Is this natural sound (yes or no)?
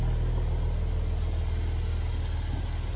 yes